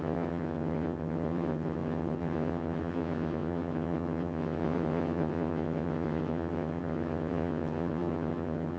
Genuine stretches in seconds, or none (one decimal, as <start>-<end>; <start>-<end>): none